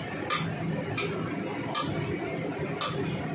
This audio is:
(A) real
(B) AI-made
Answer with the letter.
A